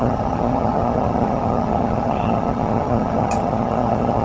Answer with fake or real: fake